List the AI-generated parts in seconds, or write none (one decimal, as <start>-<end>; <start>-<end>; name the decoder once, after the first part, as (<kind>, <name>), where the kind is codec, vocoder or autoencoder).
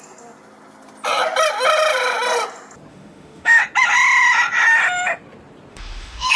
2.9-3.6 (autoencoder, DAC-VAE); 5.7-6.4